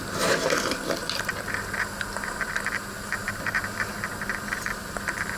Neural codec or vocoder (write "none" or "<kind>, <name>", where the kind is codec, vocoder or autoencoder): none